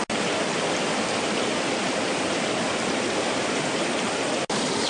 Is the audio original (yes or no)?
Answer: yes